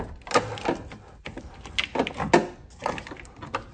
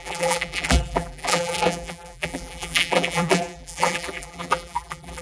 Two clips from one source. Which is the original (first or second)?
first